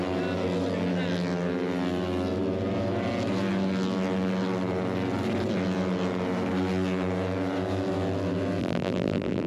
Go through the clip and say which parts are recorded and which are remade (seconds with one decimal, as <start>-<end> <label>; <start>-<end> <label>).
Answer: 0.0-8.6 recorded; 8.6-9.5 remade